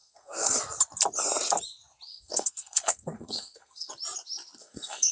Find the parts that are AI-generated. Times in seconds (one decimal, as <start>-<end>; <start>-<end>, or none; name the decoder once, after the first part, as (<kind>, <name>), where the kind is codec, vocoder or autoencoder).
0.0-0.6 (codec, SNAC); 2.1-3.9; 4.6-5.1